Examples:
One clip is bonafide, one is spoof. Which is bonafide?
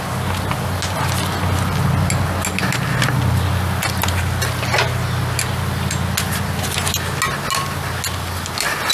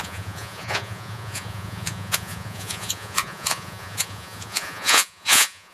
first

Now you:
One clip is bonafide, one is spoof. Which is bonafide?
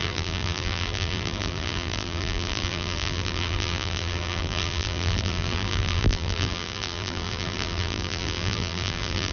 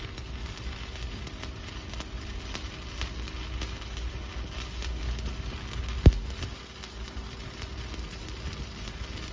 second